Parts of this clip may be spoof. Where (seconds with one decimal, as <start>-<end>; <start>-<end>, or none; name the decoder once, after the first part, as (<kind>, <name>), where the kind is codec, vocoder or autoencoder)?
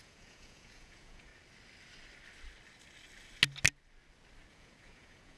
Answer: 0.0-1.3 (vocoder, Vocos); 4.5-5.4